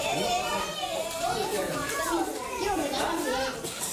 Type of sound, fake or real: fake